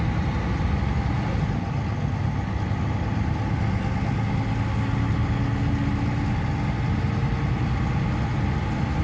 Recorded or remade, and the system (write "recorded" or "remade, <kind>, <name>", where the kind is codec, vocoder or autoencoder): recorded